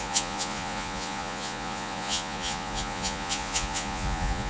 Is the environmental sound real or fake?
fake